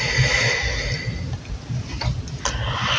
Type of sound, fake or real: real